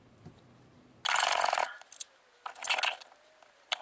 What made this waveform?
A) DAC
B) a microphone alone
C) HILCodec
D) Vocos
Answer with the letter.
B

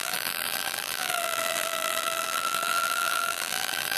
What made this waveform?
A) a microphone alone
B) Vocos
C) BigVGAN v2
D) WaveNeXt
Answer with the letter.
C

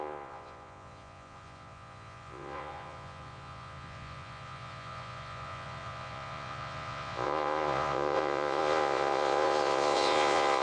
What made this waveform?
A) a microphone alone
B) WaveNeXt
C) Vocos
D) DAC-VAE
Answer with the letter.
C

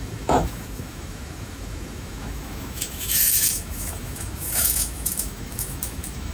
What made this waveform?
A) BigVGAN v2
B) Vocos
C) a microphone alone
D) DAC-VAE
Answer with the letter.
D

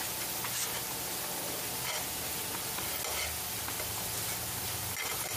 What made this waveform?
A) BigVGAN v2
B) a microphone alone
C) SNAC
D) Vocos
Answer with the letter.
B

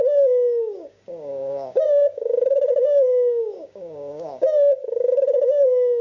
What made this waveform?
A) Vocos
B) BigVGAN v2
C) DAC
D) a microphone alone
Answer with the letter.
C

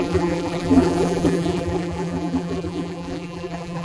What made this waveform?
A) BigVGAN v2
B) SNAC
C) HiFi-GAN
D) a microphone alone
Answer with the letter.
A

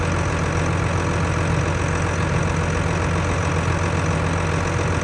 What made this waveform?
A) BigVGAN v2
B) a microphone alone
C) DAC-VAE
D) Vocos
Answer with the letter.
B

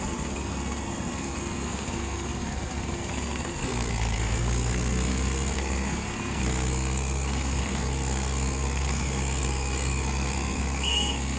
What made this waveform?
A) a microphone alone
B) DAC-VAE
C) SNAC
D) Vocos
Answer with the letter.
C